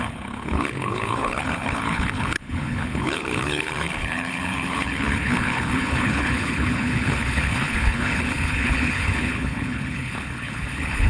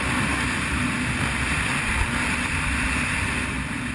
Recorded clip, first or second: second